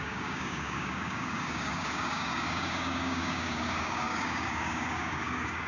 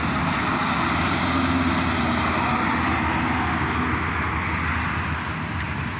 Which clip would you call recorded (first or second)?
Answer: second